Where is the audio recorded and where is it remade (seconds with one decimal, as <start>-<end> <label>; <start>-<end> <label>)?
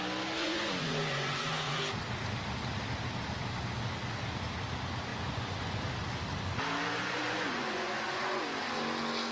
0.0-0.4 recorded; 0.4-1.8 remade; 1.8-5.1 recorded; 5.1-5.8 remade; 5.8-7.0 recorded; 7.0-8.4 remade; 8.4-9.3 recorded